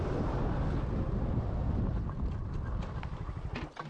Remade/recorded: recorded